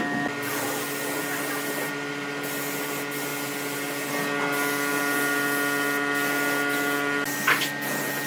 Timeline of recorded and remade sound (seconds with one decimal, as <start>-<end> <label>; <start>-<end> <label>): 0.0-8.3 recorded

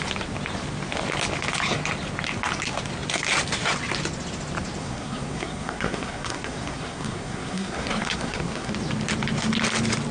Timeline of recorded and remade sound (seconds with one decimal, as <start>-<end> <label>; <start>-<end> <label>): 0.0-4.8 recorded; 4.8-8.7 remade; 8.7-10.1 recorded

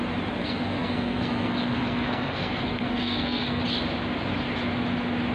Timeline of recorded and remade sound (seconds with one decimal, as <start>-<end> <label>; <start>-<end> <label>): 0.0-0.4 recorded; 0.4-3.6 remade; 3.6-5.3 recorded